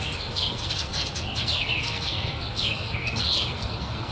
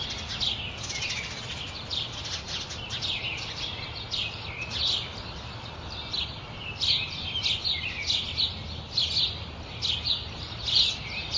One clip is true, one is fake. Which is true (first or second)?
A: second